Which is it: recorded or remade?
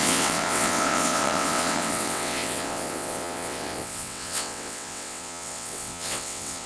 remade